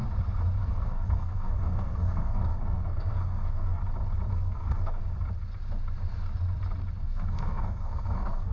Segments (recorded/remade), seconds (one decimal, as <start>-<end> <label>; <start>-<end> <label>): 0.0-0.6 recorded; 0.6-3.8 remade; 3.8-4.3 recorded; 4.3-5.0 remade; 5.0-7.0 recorded; 7.0-8.5 remade